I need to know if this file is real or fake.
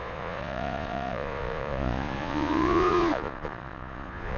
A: fake